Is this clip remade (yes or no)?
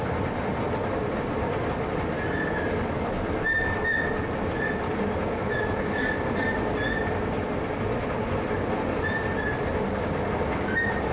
no